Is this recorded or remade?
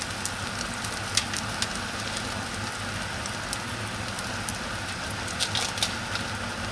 recorded